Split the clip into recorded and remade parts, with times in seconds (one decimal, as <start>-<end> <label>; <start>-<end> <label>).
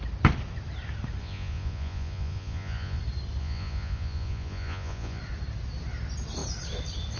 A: 0.0-1.2 recorded; 1.2-3.0 remade; 3.0-3.4 recorded; 3.4-5.2 remade; 5.2-7.2 recorded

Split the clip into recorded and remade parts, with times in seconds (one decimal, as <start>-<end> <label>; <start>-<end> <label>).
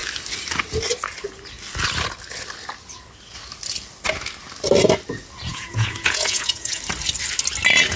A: 0.0-5.5 recorded; 5.5-6.8 remade; 6.8-8.0 recorded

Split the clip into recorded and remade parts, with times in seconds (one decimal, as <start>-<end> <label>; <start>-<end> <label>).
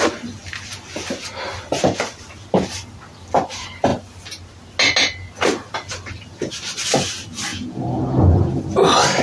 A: 0.0-7.5 recorded; 7.5-8.6 remade; 8.6-9.2 recorded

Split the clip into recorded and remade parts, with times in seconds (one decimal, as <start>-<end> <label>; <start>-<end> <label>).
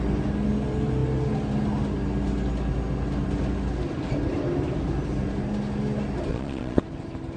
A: 0.0-6.3 recorded; 6.3-6.8 remade; 6.8-7.4 recorded